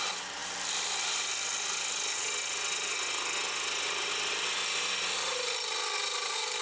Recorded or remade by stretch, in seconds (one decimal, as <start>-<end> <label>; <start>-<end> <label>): 0.0-6.6 recorded